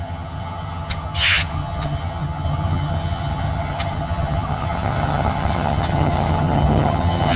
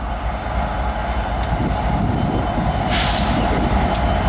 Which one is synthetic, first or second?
first